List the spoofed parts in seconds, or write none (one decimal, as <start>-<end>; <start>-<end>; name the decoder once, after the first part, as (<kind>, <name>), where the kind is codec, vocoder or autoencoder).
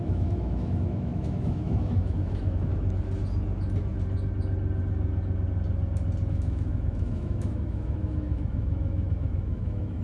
0.0-2.7 (autoencoder, DAC-VAE); 6.3-10.0